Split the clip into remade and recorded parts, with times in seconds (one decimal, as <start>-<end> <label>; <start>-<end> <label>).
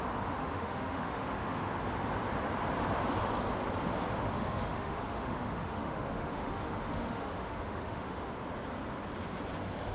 0.0-0.4 recorded; 0.4-1.7 remade; 1.7-4.2 recorded; 4.2-8.3 remade; 8.3-9.9 recorded